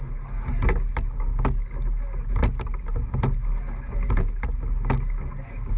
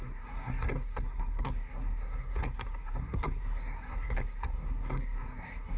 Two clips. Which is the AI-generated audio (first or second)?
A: second